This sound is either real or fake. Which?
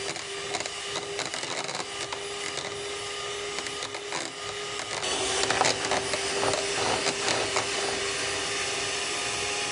real